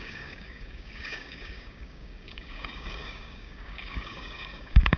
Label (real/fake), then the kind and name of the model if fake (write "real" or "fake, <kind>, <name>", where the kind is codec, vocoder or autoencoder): fake, codec, DAC